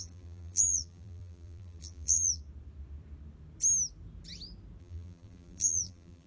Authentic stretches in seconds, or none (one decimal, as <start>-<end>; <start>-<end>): 2.4-4.8